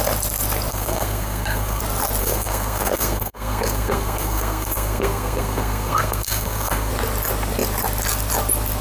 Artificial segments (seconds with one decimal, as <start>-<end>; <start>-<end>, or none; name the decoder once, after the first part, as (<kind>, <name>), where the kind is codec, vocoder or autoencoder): 0.7-1.8 (codec, SNAC); 2.2-6.9

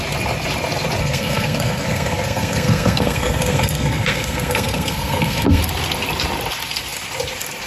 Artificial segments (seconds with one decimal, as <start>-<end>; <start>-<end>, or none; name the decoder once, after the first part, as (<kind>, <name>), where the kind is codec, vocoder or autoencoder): 1.0-5.6 (codec, SNAC)

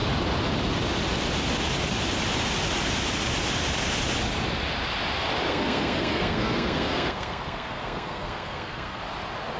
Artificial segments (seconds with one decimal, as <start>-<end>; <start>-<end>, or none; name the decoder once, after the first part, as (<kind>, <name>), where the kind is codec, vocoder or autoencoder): 5.5-9.0 (codec, SNAC)